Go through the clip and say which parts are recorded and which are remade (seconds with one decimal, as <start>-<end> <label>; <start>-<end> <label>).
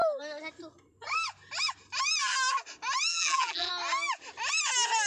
0.0-3.1 recorded; 3.1-3.7 remade; 3.7-5.1 recorded